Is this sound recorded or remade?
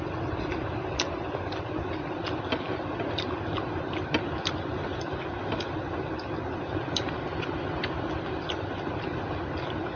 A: recorded